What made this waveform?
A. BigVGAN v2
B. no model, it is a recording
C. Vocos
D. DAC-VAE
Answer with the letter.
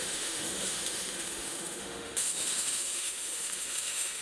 D